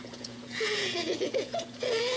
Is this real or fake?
fake